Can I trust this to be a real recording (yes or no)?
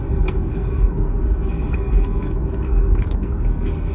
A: no